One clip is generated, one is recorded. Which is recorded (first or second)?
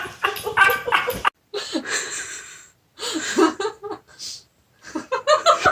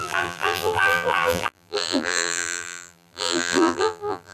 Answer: first